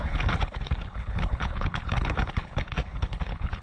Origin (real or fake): fake